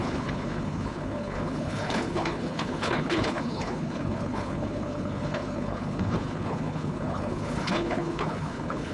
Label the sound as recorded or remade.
remade